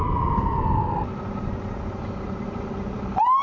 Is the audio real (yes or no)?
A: no